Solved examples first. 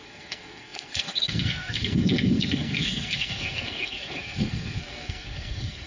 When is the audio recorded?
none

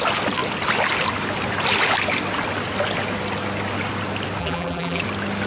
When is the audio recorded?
0.0-4.4; 5.0-5.5

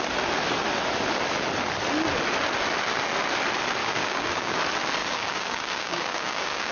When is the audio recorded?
0.0-3.8; 4.6-5.0

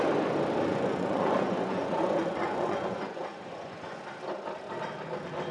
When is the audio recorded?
0.0-0.7; 4.0-5.5

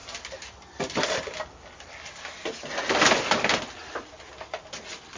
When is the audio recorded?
0.0-5.2

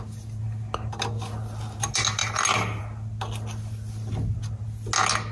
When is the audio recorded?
0.0-5.3

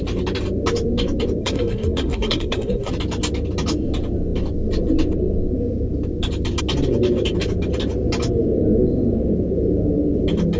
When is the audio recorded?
0.0-1.4; 2.9-10.6

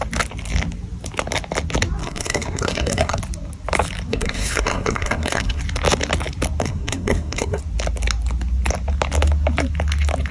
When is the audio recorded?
0.0-2.0; 3.2-4.1; 5.6-6.6; 7.6-10.3